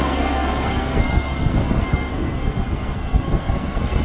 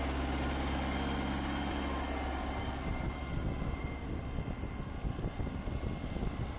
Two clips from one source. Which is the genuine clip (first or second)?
second